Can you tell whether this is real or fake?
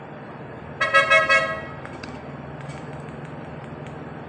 real